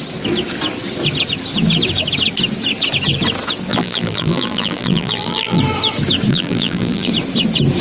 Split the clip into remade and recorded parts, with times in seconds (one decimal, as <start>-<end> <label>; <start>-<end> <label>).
0.0-3.7 recorded; 3.7-5.6 remade; 5.6-6.3 recorded; 6.3-7.1 remade; 7.1-7.8 recorded